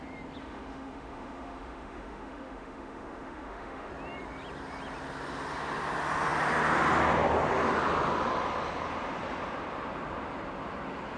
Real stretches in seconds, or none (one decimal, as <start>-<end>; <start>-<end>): 0.0-0.4; 3.9-11.2